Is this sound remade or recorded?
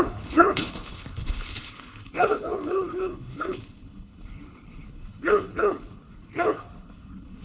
remade